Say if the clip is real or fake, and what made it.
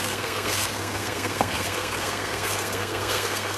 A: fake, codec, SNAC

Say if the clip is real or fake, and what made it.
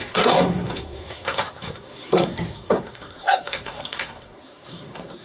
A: fake, codec, SNAC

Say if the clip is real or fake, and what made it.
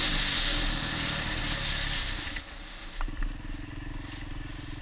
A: real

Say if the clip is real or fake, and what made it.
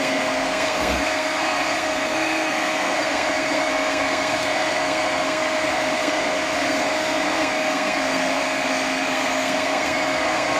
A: fake, codec, SNAC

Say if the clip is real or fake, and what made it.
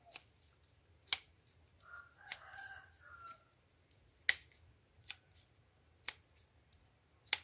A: real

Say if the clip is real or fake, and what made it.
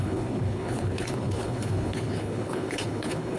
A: fake, codec, HILCodec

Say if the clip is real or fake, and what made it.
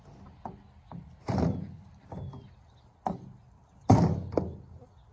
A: real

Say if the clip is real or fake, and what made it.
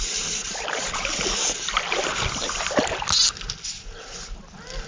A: real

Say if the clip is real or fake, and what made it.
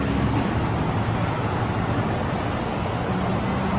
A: real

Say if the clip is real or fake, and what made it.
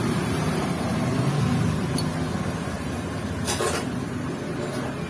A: real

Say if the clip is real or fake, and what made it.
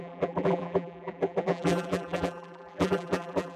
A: fake, vocoder, BigVGAN v2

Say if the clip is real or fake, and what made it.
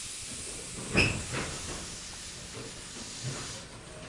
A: real